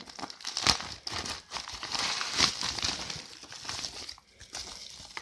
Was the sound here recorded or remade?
recorded